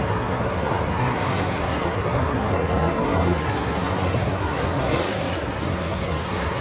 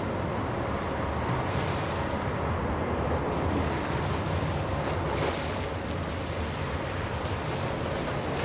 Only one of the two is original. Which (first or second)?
second